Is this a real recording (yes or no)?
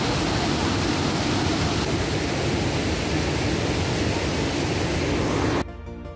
yes